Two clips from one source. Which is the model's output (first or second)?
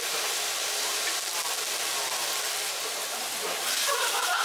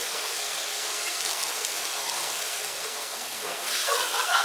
second